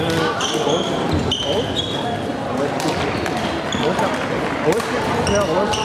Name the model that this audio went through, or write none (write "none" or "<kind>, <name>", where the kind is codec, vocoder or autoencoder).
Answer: vocoder, BigVGAN v2